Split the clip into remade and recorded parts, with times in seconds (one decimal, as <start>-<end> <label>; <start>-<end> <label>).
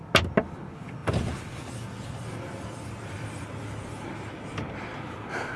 0.0-5.6 recorded